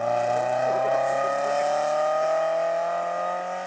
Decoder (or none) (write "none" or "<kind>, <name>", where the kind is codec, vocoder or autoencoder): none